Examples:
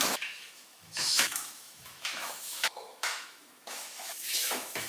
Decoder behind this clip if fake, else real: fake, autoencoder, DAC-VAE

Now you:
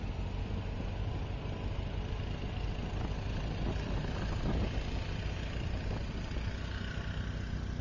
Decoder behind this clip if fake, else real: real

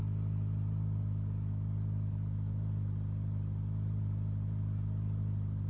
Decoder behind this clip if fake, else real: real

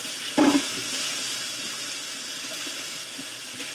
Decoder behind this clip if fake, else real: real